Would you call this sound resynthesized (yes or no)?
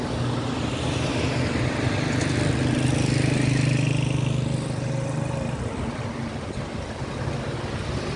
no